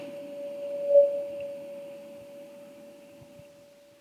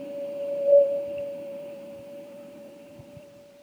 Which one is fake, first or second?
second